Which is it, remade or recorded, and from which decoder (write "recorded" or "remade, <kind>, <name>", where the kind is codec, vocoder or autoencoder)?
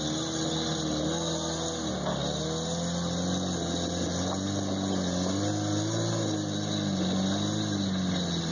recorded